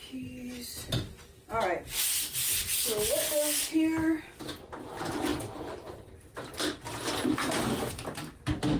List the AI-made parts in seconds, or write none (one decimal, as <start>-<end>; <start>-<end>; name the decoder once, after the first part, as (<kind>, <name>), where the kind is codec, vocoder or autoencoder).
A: none